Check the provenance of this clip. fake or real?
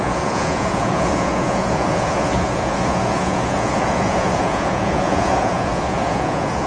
fake